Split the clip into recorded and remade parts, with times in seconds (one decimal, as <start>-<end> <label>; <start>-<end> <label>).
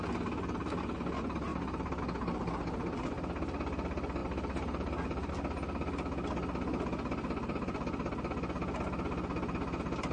0.0-1.5 recorded; 1.5-2.0 remade; 2.0-4.2 recorded; 4.2-5.3 remade; 5.3-10.1 recorded